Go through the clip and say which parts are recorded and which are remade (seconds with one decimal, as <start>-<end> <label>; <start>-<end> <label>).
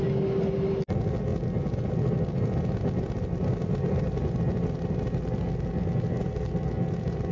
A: 0.0-7.3 recorded